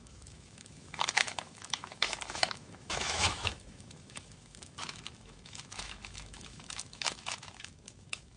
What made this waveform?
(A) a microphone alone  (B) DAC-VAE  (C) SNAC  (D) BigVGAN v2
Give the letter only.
B